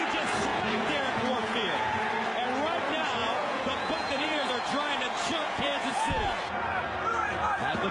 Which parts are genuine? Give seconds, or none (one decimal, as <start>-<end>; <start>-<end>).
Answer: 0.0-0.5; 2.0-3.2; 4.5-5.3; 6.4-7.9